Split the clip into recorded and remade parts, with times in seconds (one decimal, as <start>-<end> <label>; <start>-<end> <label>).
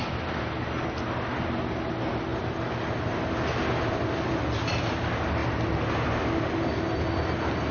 0.0-7.7 recorded